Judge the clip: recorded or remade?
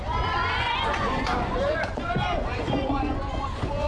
remade